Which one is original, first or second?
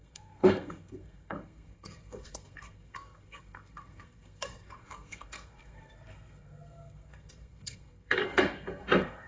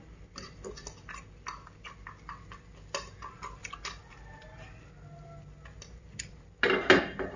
second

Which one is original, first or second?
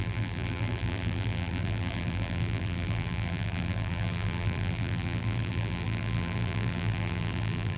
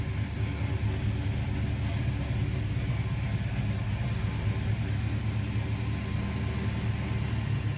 second